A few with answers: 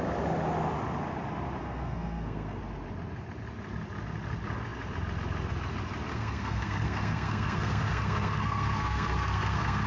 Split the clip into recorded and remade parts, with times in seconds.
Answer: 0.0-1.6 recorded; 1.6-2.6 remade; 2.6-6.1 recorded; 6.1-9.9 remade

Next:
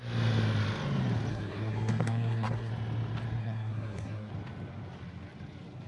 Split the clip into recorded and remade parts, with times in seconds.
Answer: 0.0-1.3 recorded; 1.3-2.7 remade; 2.7-3.4 recorded; 3.4-4.3 remade; 4.3-5.9 recorded